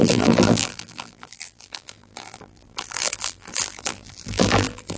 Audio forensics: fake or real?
fake